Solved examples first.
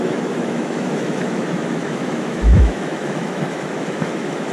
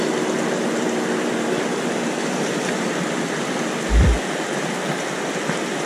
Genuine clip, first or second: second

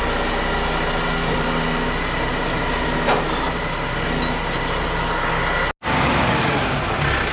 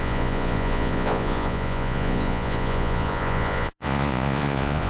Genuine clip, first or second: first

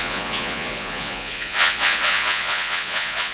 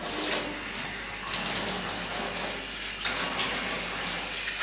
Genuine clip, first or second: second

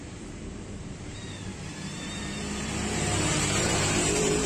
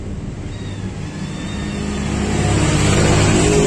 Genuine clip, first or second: second